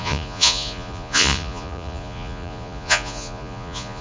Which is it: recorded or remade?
remade